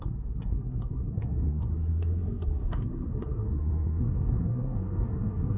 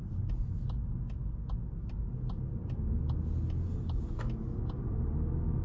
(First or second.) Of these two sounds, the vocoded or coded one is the first